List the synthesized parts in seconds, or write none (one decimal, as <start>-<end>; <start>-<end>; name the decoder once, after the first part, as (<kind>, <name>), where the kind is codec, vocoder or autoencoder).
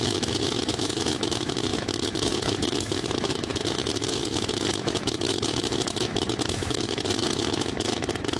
0.0-8.4 (autoencoder, DAC-VAE)